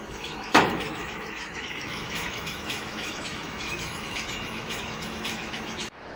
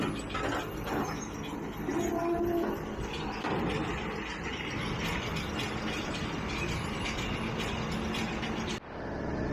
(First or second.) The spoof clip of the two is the first